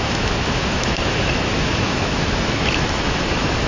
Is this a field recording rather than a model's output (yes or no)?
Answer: no